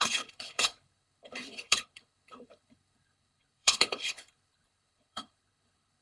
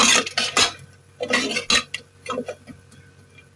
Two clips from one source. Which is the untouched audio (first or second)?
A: second